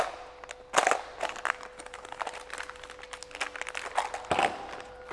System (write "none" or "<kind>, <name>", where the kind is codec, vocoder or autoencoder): none